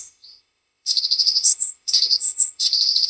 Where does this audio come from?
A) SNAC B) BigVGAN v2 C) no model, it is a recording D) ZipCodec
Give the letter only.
D